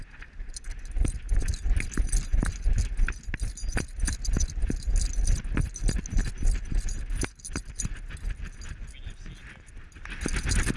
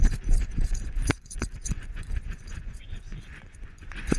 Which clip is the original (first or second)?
first